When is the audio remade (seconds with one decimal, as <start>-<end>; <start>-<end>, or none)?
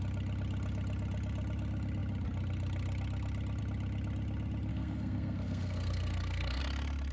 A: 4.7-6.6